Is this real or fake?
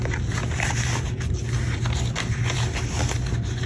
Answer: real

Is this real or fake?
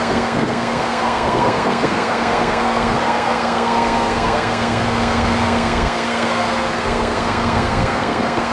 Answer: fake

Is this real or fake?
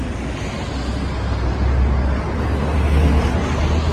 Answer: real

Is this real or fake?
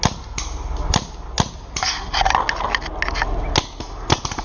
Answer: real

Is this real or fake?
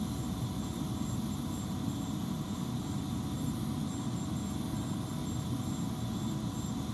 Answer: real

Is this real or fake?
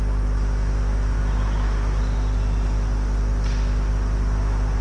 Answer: real